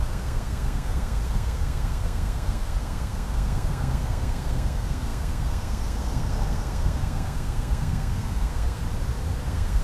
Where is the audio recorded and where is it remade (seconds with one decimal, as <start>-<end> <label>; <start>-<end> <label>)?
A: 0.0-8.8 remade; 8.8-9.4 recorded; 9.4-9.8 remade